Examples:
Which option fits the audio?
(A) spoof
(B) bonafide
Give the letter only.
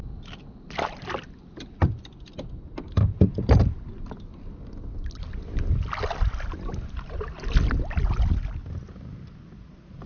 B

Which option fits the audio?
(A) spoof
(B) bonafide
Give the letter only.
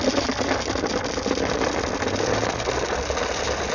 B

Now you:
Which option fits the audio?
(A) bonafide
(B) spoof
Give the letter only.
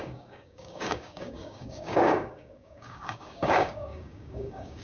B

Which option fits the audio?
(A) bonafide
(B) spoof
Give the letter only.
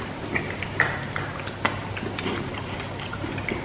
A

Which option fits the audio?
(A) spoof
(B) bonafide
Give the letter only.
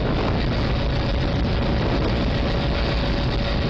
B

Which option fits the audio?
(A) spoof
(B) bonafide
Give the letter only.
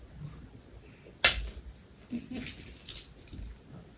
B